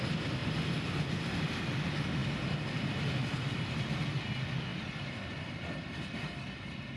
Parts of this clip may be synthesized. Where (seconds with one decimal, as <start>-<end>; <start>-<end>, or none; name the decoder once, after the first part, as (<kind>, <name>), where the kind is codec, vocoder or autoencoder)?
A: 4.7-7.0 (vocoder, BigVGAN v2)